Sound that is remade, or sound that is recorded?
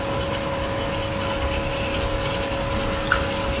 recorded